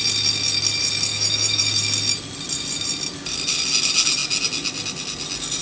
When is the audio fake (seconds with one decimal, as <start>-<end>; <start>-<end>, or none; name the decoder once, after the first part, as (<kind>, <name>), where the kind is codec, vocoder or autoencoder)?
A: 1.1-1.6 (autoencoder, DAC-VAE)